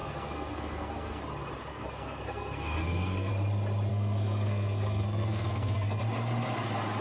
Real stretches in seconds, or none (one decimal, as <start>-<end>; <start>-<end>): 1.2-1.7; 3.3-3.9; 6.0-7.0